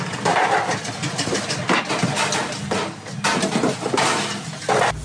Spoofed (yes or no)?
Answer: no